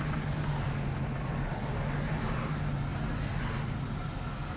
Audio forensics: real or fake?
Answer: real